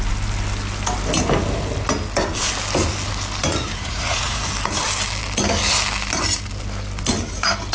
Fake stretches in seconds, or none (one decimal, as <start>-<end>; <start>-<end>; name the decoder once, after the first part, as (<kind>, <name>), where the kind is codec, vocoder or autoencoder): 3.5-4.5 (vocoder, Vocos)